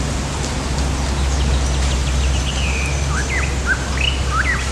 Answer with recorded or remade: recorded